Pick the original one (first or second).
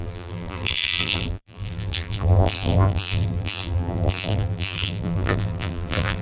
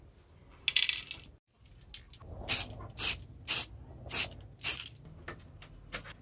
second